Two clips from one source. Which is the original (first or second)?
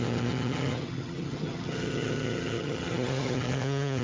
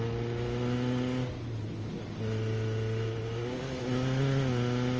second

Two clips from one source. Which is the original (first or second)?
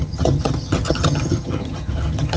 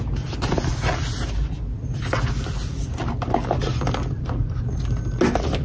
second